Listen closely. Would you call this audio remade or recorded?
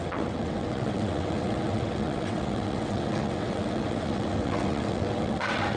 remade